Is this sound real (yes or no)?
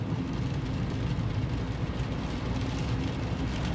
yes